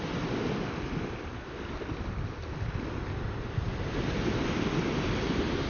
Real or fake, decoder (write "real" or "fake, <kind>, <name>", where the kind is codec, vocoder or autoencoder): real